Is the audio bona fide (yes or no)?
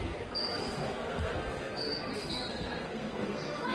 no